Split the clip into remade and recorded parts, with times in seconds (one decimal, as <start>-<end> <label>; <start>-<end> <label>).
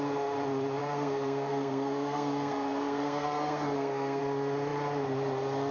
0.0-0.8 recorded; 0.8-4.2 remade; 4.2-5.7 recorded